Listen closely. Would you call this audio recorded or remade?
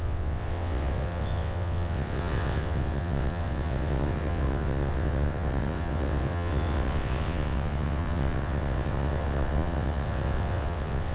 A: remade